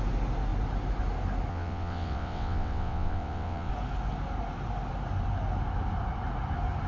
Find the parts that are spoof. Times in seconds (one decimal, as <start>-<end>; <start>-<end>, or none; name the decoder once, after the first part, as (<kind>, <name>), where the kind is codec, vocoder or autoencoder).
1.5-3.7 (vocoder, WaveNeXt)